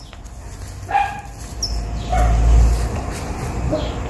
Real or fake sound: real